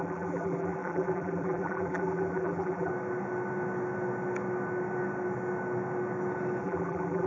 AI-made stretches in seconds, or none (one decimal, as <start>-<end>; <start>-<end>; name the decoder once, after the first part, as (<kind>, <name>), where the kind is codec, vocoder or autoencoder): 0.0-2.9 (vocoder, BigVGAN v2); 6.6-7.3